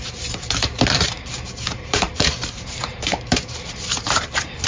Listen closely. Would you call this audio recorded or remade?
remade